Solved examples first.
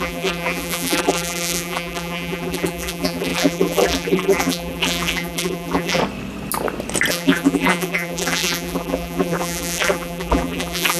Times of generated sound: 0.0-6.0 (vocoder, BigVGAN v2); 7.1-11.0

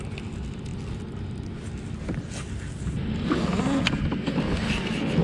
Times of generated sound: none

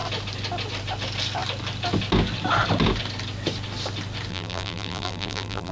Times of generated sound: 4.3-5.7 (vocoder, BigVGAN v2)

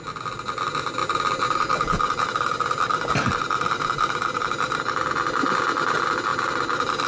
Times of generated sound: 1.0-4.8 (vocoder, BigVGAN v2); 6.3-7.1